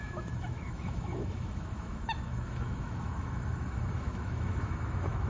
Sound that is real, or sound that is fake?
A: fake